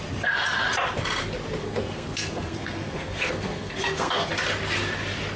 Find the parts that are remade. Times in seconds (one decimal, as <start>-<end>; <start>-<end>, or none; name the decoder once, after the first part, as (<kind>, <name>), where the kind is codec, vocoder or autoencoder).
1.6-4.3 (codec, SNAC)